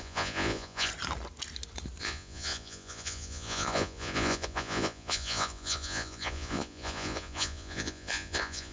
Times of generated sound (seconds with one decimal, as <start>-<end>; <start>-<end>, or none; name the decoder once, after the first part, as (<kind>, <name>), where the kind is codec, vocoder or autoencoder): 0.0-0.9 (vocoder, Vocos); 2.0-8.7